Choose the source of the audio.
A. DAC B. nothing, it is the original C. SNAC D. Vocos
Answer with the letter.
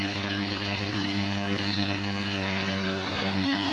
C